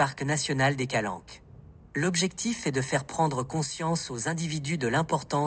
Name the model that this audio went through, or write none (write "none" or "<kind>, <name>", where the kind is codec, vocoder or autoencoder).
none